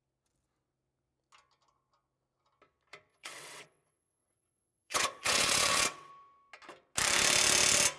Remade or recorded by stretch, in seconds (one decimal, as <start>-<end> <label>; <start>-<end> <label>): 0.0-3.1 recorded; 3.1-6.1 remade; 6.1-8.0 recorded